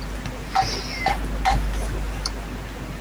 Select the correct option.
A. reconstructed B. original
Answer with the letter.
B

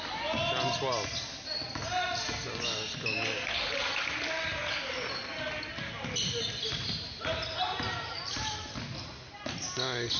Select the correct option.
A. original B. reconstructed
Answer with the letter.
A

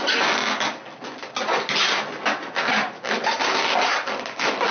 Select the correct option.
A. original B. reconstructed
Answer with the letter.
A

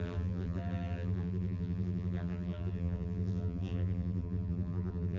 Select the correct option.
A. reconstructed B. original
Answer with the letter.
A